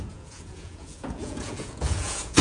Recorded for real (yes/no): no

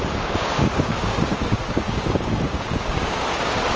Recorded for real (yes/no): no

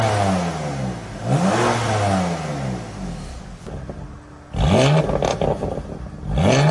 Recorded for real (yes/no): yes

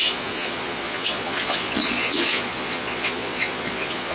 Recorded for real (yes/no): no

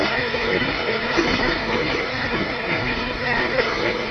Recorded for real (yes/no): no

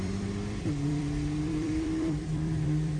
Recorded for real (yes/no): no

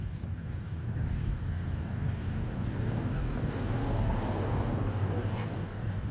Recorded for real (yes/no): no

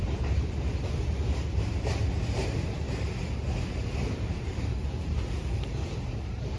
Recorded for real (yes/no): no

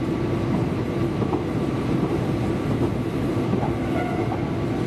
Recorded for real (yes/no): yes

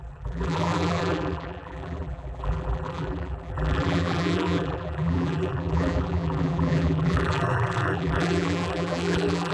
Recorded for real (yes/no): no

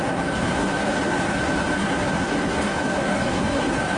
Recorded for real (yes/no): no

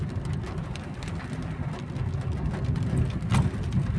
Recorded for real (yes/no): no